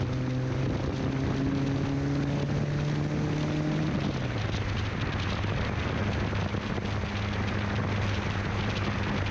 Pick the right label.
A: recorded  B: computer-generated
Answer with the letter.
A